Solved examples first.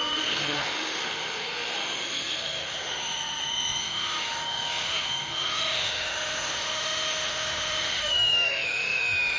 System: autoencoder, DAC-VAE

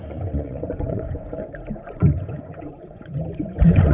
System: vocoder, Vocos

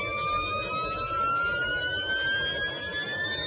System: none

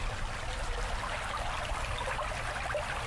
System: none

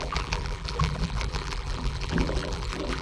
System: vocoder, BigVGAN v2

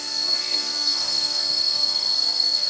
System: codec, SNAC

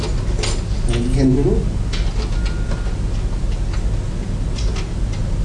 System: none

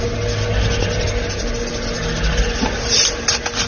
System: none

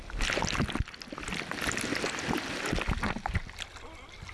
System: none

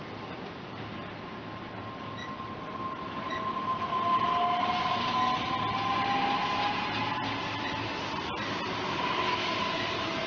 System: none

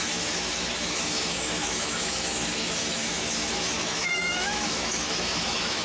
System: autoencoder, DAC-VAE